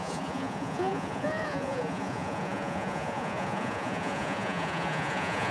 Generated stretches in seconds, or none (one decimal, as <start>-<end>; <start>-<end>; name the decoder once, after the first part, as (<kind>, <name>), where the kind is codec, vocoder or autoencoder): 0.0-5.5 (vocoder, Vocos)